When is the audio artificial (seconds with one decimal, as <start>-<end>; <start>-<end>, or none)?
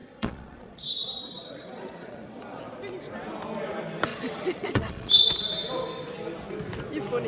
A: 0.0-2.6; 4.1-5.3